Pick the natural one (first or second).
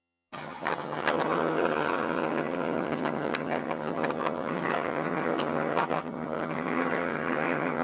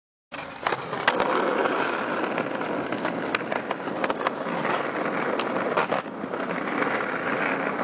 second